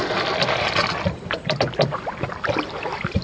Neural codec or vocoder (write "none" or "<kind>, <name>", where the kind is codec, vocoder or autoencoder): none